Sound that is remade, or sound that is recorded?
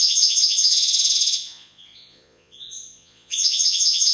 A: remade